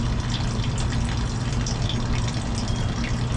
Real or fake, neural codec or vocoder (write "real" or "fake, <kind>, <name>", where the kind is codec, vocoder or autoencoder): real